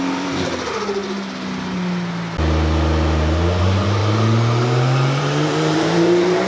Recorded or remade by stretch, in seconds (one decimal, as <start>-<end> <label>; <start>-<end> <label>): 0.0-1.0 remade; 1.0-3.6 recorded; 3.6-4.0 remade; 4.0-5.2 recorded; 5.2-6.5 remade